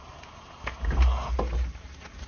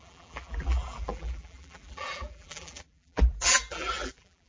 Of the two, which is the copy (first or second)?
second